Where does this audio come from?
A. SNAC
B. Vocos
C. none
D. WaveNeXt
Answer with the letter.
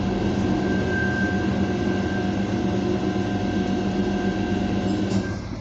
C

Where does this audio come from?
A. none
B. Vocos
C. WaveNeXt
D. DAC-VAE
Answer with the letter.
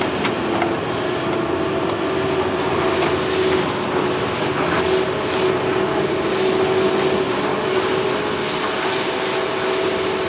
A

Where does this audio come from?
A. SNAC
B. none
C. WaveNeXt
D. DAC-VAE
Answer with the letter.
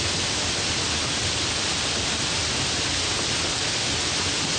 B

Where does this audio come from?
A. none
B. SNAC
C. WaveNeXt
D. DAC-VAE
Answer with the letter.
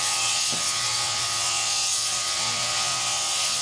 C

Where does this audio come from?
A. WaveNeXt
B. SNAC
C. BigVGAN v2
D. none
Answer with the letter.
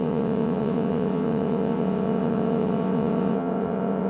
A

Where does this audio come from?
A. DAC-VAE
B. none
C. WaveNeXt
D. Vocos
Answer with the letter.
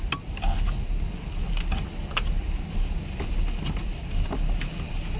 B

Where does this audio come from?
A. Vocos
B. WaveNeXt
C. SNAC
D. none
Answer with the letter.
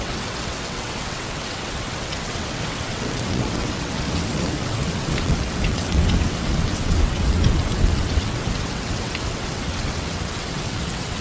B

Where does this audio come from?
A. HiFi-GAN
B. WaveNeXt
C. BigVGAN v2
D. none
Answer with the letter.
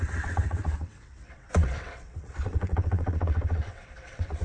B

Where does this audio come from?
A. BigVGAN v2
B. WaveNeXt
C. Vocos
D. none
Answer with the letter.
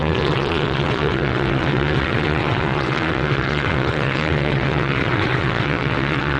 B